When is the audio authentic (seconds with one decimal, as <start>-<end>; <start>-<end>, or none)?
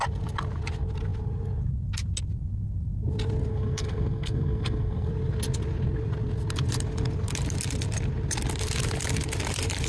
0.0-3.5; 5.1-9.9